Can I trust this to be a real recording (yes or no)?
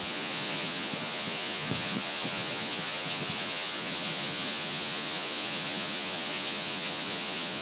no